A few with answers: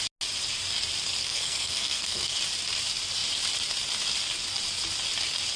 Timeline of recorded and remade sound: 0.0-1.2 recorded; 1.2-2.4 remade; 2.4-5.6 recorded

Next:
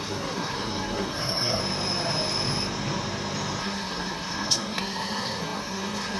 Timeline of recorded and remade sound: 0.0-1.6 remade; 1.6-3.6 recorded; 3.6-6.2 remade